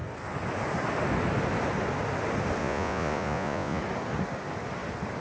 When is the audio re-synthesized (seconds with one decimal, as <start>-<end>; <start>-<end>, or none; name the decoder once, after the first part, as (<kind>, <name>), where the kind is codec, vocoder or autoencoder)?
2.6-3.8 (vocoder, Vocos)